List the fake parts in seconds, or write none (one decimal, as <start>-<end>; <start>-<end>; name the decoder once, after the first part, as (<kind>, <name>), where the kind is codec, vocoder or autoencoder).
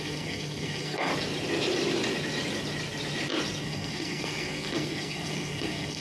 0.0-1.1 (codec, SNAC); 3.6-6.0